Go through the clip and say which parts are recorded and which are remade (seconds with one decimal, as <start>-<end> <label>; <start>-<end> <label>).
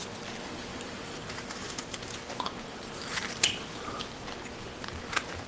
0.0-0.7 recorded; 0.7-4.0 remade; 4.0-4.6 recorded; 4.6-5.5 remade